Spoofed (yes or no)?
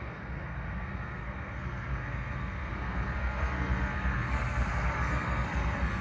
yes